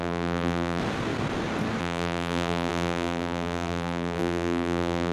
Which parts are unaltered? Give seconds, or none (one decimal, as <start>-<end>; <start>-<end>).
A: 0.8-1.8